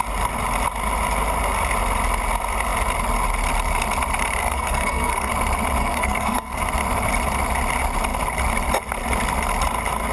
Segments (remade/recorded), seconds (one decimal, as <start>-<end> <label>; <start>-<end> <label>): 0.0-4.4 recorded; 4.4-5.3 remade; 5.3-5.8 recorded; 5.8-6.6 remade; 6.6-10.1 recorded